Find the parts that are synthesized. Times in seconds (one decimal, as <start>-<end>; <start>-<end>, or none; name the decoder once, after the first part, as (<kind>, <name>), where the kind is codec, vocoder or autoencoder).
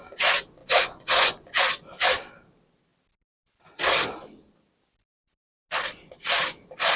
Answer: 0.6-1.6 (vocoder, Vocos)